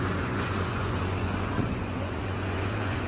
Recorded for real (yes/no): no